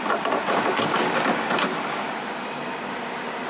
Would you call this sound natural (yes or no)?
yes